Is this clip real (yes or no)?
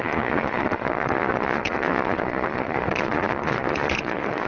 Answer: no